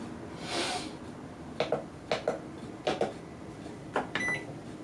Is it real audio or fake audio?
real